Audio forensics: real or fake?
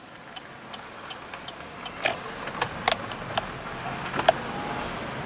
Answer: real